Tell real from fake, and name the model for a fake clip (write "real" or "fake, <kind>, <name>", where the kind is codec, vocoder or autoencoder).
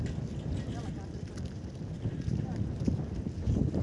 real